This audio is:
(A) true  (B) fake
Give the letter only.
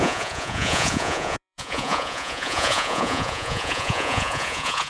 B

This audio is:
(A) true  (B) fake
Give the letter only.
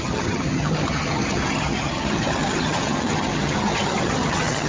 B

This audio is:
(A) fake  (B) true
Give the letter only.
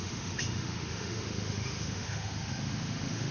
A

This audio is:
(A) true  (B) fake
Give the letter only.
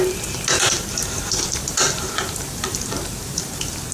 B